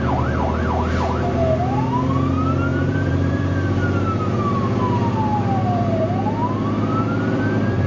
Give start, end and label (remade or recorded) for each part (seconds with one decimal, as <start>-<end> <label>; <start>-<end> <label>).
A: 0.0-2.7 recorded; 2.7-3.4 remade; 3.4-5.3 recorded; 5.3-6.2 remade; 6.2-7.9 recorded

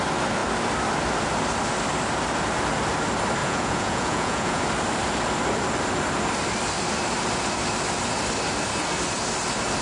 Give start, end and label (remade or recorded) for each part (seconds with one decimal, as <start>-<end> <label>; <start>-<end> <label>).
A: 0.0-3.4 recorded; 3.4-4.6 remade; 4.6-9.8 recorded

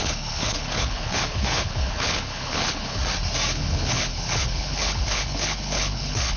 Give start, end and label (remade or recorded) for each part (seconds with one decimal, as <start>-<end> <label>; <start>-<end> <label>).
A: 0.0-3.0 remade; 3.0-3.5 recorded; 3.5-6.4 remade

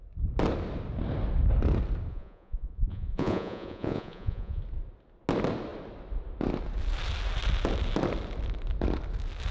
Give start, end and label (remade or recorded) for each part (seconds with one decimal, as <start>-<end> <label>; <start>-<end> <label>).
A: 0.0-2.1 recorded; 2.1-4.6 remade; 4.6-9.5 recorded

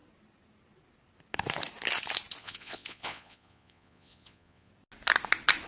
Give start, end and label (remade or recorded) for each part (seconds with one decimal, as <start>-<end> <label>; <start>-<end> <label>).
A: 0.0-2.4 recorded; 2.4-4.7 remade; 4.7-5.7 recorded